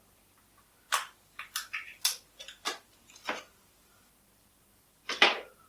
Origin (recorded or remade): remade